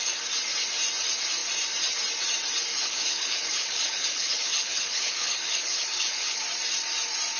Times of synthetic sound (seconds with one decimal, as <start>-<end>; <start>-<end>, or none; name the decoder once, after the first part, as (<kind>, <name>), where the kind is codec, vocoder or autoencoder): 2.7-6.4 (codec, HILCodec)